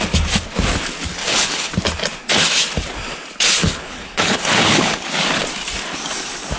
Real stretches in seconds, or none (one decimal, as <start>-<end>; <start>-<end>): 0.0-1.2; 1.7-3.6; 5.1-6.6

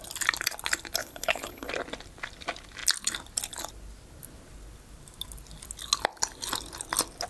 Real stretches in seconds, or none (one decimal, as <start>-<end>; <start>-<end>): 0.0-1.0; 1.7-7.3

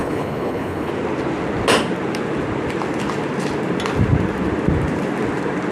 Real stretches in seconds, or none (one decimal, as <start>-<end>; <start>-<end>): 0.9-5.7

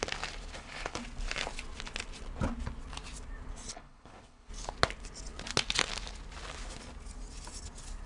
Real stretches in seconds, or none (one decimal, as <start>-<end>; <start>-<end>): 0.0-0.5; 1.0-3.7; 4.5-8.1

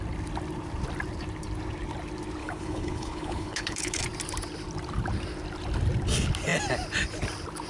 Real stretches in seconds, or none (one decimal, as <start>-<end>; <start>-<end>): 0.0-2.4; 4.0-7.7

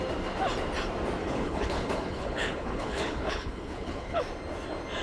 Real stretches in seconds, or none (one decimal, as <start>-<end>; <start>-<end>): 0.0-1.2; 4.2-5.0

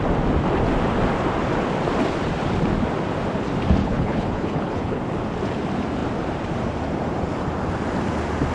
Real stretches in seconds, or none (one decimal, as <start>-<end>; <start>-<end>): 0.0-3.8; 5.0-8.5

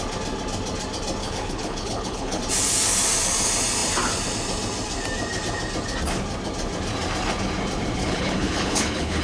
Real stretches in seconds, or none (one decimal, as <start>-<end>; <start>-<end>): 0.0-1.2; 2.4-8.0